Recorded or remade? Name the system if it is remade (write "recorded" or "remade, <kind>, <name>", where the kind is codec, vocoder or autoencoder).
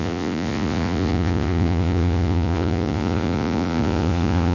remade, vocoder, Vocos